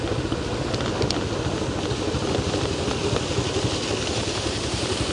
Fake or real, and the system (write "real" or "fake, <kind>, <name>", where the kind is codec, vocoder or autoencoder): real